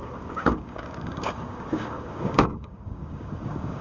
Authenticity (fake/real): fake